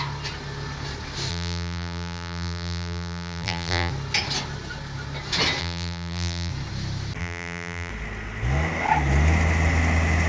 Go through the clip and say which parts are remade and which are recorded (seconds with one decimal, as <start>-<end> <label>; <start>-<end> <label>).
0.0-1.3 recorded; 1.3-3.9 remade; 3.9-5.6 recorded; 5.6-6.5 remade; 6.5-7.2 recorded; 7.2-7.9 remade; 7.9-10.3 recorded